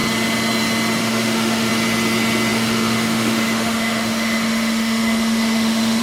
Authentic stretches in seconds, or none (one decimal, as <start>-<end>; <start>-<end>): 0.0-1.0; 1.7-2.5